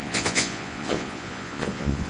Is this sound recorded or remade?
remade